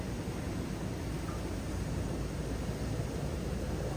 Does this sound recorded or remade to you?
recorded